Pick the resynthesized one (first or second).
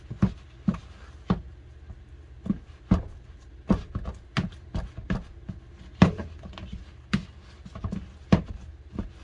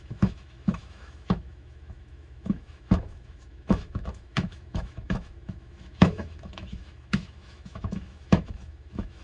second